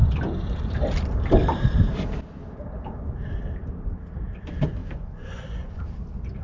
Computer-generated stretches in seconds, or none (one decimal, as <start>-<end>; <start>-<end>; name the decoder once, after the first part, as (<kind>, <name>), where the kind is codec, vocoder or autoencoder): 4.8-5.8 (vocoder, Vocos)